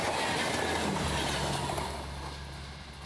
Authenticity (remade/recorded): recorded